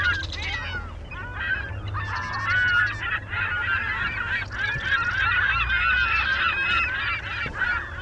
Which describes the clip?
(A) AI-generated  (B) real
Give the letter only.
B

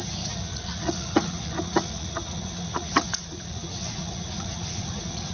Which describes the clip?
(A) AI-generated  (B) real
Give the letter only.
A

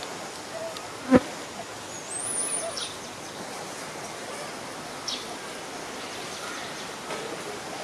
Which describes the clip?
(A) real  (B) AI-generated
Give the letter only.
A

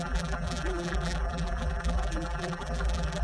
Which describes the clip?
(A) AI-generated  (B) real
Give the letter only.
A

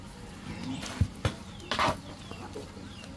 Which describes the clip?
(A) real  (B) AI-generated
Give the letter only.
A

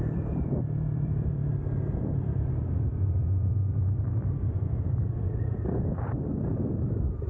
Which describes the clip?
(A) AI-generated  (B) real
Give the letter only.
A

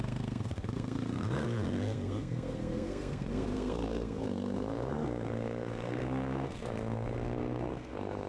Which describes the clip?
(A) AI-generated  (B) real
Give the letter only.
A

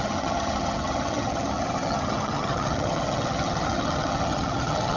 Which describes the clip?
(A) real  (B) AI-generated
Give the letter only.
B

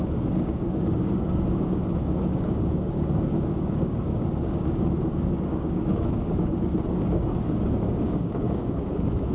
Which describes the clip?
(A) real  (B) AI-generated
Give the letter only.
B